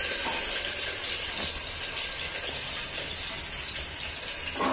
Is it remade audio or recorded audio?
recorded